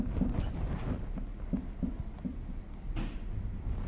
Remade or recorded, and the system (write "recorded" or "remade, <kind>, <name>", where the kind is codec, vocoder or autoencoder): recorded